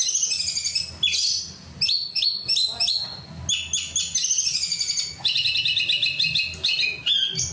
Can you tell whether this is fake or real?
real